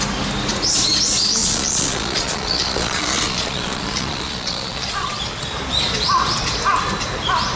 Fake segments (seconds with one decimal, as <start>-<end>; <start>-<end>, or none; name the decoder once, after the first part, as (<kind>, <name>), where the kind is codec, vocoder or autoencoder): 1.4-5.2 (vocoder, Vocos)